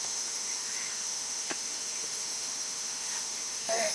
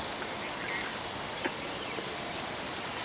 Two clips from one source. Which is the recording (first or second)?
second